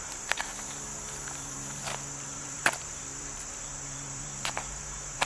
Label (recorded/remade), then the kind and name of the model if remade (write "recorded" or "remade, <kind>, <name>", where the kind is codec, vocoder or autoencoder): remade, vocoder, BigVGAN v2